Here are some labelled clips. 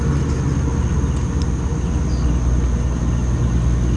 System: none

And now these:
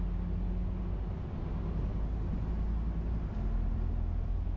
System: none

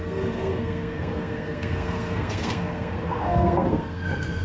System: codec, SNAC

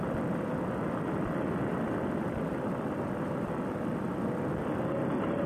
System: none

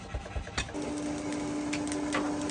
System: none